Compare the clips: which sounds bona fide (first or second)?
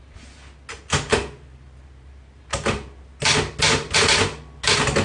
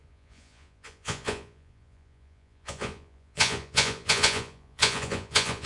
first